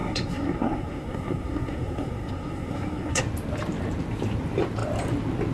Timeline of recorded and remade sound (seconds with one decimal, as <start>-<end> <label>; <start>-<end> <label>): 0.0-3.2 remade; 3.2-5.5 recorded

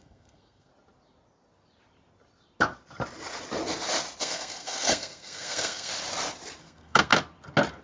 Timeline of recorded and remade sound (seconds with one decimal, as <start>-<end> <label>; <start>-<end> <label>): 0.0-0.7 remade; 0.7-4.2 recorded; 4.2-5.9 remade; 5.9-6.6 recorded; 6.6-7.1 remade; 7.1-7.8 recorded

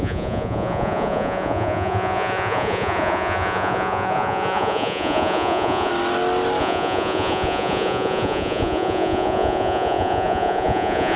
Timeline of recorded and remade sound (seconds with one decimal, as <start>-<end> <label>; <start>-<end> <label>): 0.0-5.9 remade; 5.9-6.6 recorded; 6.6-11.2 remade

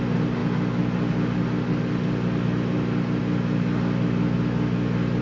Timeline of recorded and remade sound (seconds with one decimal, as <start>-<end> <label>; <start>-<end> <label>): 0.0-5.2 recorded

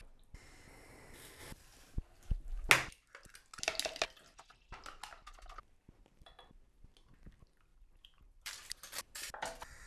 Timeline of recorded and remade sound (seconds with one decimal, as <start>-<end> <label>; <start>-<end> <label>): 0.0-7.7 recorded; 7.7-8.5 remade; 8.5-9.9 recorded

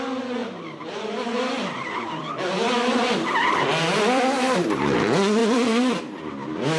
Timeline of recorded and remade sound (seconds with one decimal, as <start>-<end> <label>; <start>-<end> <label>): 0.0-0.4 recorded; 0.4-4.2 remade; 4.2-5.4 recorded; 5.4-5.9 remade; 5.9-6.8 recorded